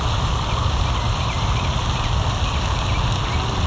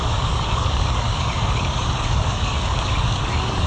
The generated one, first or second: second